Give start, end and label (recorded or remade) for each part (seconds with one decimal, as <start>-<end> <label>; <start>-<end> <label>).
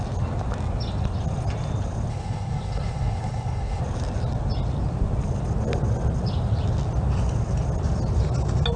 0.0-2.1 recorded; 2.1-3.8 remade; 3.8-8.8 recorded